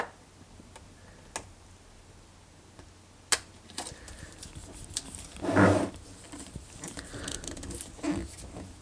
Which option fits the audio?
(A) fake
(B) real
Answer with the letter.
B